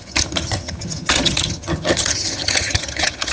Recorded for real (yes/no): no